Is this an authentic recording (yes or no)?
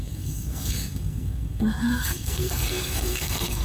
no